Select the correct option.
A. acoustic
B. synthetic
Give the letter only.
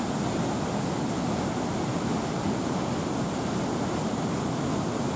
A